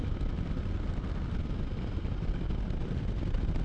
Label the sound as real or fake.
real